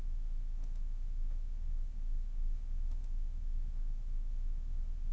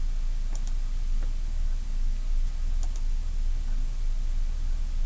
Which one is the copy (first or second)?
first